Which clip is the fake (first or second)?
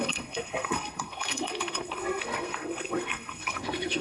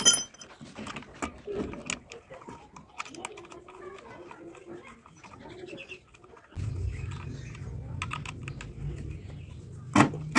first